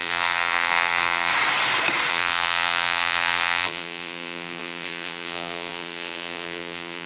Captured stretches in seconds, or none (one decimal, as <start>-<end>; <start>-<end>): 1.3-2.1